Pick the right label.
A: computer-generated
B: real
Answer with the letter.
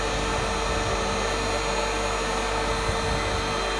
B